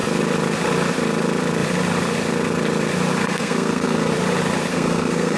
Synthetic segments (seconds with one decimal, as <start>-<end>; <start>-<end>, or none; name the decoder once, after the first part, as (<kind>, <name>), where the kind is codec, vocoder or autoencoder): 3.3-4.1 (codec, SNAC); 4.7-5.4